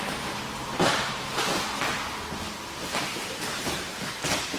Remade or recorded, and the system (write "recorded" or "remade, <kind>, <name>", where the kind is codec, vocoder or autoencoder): recorded